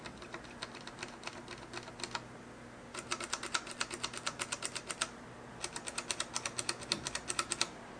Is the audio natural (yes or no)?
yes